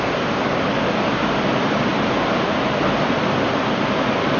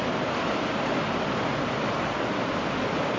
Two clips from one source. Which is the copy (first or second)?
second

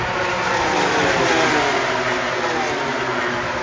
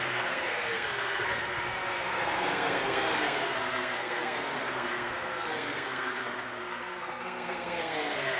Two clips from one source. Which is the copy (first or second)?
second